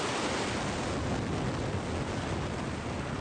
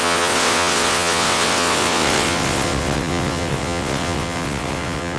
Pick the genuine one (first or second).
first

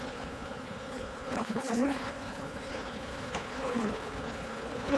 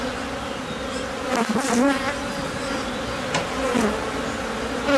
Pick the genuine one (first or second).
second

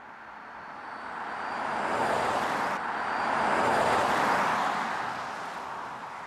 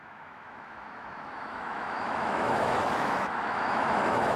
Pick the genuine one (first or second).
first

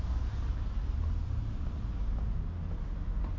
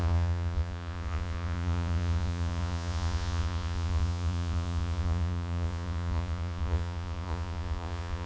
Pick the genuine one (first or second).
first